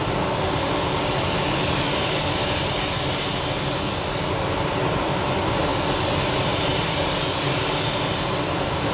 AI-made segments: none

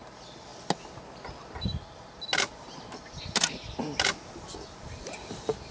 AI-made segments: none

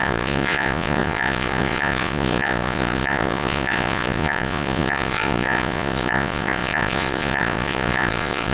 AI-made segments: 0.0-8.5

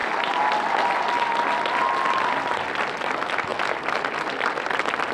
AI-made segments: none

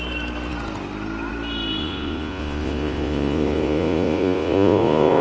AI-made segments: 1.8-5.2

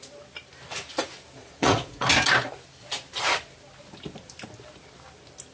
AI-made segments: 1.4-2.1

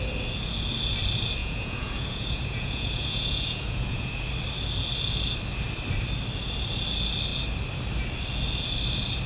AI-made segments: 1.4-4.3